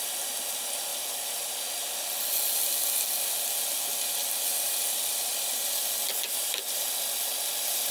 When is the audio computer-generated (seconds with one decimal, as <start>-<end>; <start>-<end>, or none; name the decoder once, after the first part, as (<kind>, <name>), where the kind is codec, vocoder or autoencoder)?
none